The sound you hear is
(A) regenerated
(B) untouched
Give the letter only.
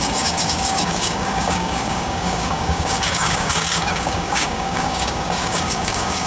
A